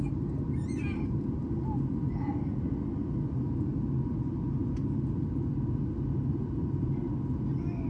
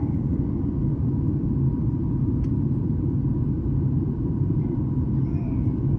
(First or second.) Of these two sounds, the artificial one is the second